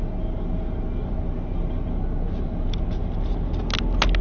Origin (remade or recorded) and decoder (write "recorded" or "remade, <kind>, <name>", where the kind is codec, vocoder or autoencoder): recorded